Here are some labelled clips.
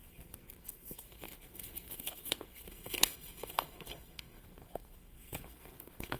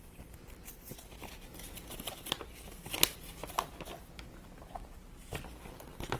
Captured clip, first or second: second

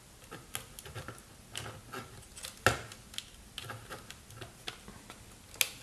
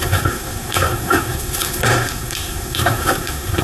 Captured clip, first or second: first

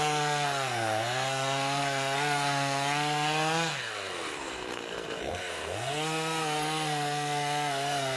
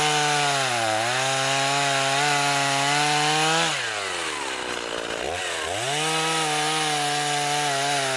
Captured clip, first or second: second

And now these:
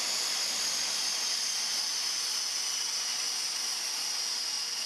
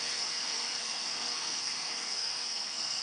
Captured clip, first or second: first